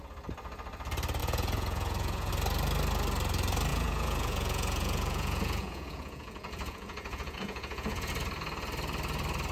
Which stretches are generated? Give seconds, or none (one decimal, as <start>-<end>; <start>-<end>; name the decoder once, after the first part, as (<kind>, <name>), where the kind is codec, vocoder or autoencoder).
1.2-2.3 (vocoder, Vocos); 3.7-8.1